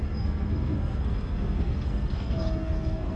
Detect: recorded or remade remade